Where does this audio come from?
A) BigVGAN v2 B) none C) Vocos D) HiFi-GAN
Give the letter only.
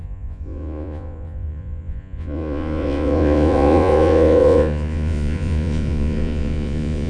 C